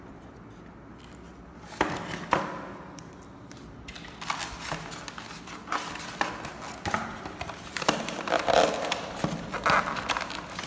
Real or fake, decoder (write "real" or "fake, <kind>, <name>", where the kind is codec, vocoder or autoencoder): real